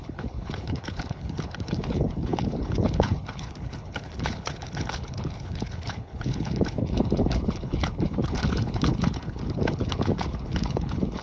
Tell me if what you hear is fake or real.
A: fake